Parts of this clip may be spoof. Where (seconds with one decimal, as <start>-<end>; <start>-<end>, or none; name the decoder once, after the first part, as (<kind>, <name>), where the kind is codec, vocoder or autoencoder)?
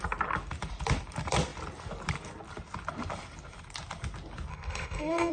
4.5-5.3 (codec, SNAC)